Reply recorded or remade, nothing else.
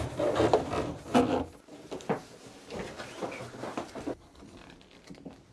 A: recorded